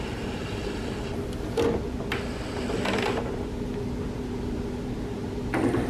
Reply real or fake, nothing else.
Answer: real